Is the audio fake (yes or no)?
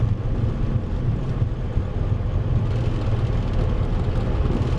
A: no